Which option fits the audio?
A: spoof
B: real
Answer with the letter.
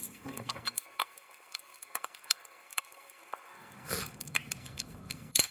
A